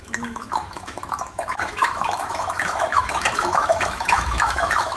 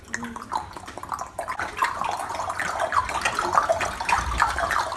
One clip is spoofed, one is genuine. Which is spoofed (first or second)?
first